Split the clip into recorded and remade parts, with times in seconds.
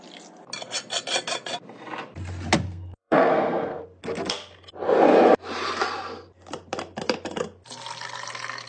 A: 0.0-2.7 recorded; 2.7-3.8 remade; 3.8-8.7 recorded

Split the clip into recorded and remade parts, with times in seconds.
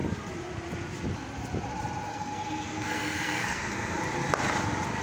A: 0.0-2.1 recorded; 2.1-4.0 remade; 4.0-5.0 recorded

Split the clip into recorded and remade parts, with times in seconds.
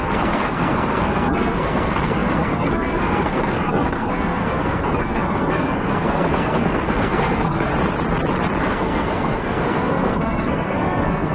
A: 0.0-7.7 remade; 7.7-8.6 recorded; 8.6-11.3 remade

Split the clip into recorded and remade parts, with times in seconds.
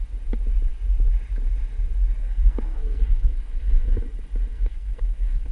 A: 0.0-2.2 recorded; 2.2-3.9 remade; 3.9-4.5 recorded; 4.5-5.5 remade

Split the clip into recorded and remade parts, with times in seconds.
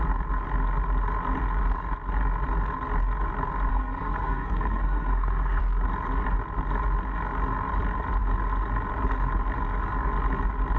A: 0.0-3.7 recorded; 3.7-5.6 remade; 5.6-10.8 recorded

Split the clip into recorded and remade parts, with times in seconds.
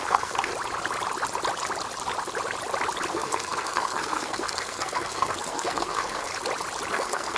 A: 0.0-0.5 remade; 0.5-3.1 recorded; 3.1-6.3 remade; 6.3-6.9 recorded; 6.9-7.4 remade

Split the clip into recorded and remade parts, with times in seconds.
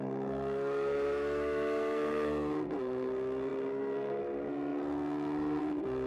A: 0.0-6.1 remade